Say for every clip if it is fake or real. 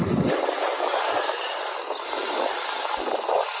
real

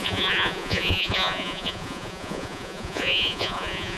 fake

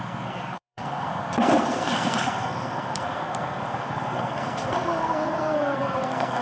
fake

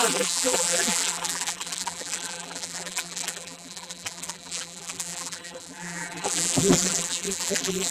fake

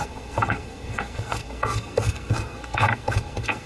fake